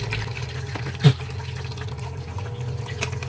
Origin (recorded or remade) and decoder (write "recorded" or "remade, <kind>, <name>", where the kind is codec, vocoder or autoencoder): recorded